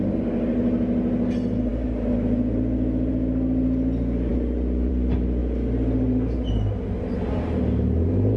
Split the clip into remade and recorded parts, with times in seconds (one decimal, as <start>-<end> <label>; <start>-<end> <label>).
0.0-8.4 recorded